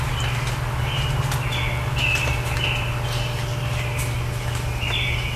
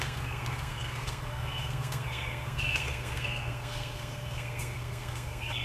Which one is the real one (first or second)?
first